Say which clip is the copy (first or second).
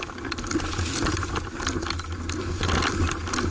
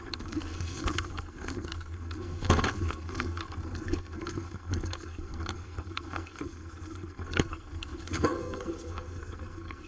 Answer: second